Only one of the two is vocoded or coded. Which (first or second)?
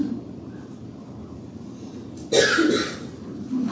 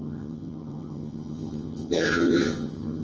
second